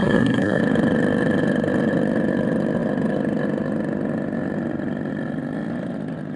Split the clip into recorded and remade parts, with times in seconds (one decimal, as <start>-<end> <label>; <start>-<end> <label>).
0.0-0.6 remade; 0.6-6.4 recorded